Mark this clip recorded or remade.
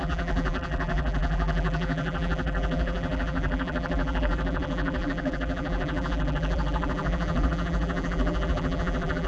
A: remade